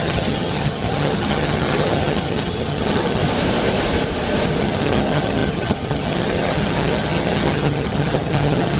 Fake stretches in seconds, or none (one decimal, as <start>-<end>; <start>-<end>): 0.0-3.2; 4.6-8.8